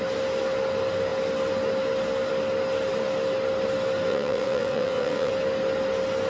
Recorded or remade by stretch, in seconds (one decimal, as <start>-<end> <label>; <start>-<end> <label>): 0.0-4.1 recorded; 4.1-5.3 remade; 5.3-6.3 recorded